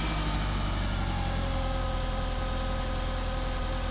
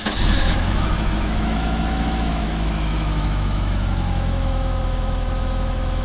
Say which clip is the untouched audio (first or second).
first